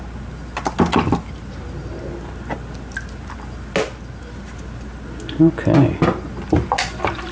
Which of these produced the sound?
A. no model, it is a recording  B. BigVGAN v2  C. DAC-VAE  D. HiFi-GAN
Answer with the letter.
A